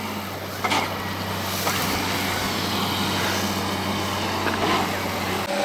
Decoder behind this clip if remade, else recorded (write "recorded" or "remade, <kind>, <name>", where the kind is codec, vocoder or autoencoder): recorded